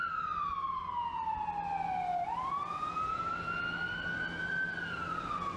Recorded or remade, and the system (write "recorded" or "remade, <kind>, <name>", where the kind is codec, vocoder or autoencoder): recorded